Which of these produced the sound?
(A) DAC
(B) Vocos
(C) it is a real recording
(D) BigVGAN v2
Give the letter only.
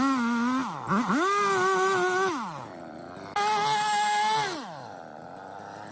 C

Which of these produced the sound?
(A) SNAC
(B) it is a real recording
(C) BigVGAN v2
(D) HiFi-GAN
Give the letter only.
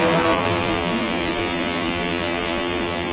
C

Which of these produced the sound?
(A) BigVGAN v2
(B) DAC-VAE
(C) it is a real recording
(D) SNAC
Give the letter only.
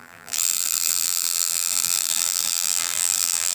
A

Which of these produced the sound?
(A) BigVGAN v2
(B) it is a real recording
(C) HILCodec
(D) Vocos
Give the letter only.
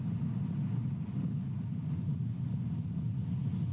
B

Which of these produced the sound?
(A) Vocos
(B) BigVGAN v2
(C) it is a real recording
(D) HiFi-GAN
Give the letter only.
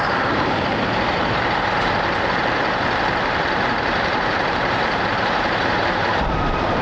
B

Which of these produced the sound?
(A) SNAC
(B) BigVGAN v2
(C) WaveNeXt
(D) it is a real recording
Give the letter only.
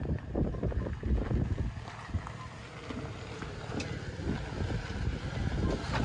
D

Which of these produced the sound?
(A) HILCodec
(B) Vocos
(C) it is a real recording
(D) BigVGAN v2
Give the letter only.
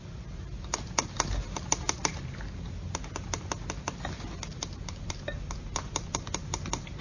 C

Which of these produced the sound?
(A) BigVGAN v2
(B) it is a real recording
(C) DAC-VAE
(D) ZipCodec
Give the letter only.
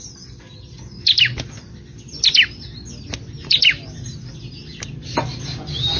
B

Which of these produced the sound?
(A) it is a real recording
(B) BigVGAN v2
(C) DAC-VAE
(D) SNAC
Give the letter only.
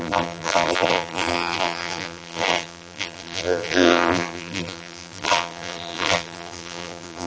B